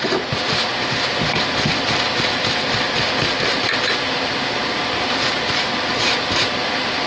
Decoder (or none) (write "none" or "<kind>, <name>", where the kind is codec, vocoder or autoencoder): vocoder, BigVGAN v2